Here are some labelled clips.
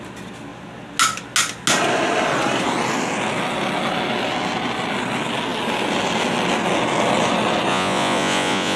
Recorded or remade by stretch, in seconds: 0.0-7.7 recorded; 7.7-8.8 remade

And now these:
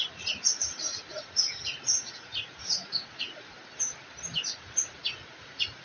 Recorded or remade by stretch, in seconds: 0.0-3.6 remade; 3.6-4.5 recorded; 4.5-5.8 remade

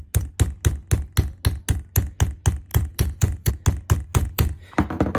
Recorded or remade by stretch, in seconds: 0.0-2.7 recorded; 2.7-3.5 remade; 3.5-4.1 recorded; 4.1-4.7 remade; 4.7-5.2 recorded

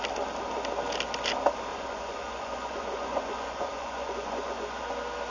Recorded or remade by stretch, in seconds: 0.0-1.7 recorded; 1.7-4.8 remade; 4.8-5.3 recorded

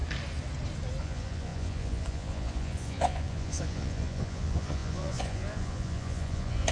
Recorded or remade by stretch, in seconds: 0.0-1.0 recorded; 1.0-6.7 remade